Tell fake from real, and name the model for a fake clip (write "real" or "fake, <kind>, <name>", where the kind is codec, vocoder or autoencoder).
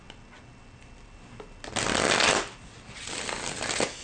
real